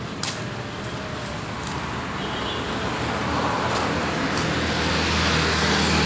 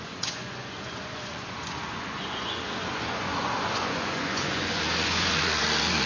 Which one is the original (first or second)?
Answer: first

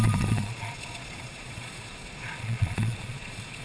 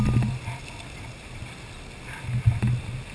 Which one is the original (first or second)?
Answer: second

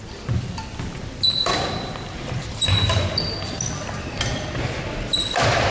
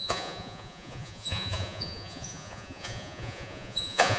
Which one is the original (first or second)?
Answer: first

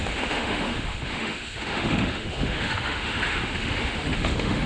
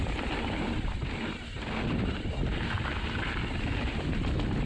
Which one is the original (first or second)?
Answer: second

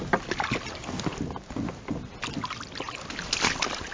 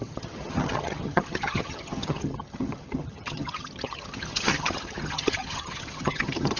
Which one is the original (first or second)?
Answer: first